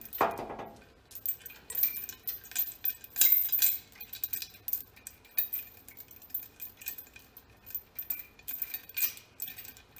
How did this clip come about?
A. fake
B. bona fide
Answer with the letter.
B